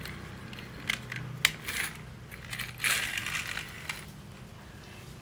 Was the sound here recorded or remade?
recorded